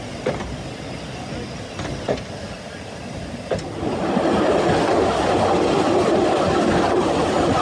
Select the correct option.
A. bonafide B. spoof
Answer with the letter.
A